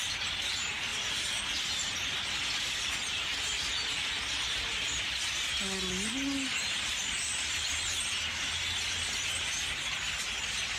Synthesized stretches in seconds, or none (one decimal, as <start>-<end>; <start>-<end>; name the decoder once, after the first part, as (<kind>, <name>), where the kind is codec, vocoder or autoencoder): none